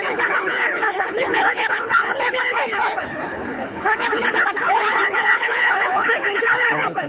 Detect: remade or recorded remade